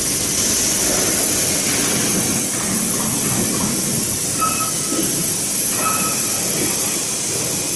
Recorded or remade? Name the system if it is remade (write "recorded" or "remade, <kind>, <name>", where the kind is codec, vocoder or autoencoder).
recorded